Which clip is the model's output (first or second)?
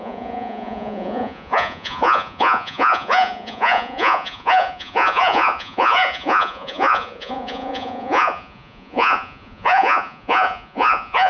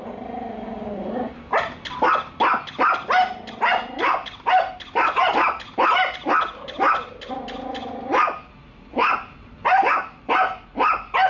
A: first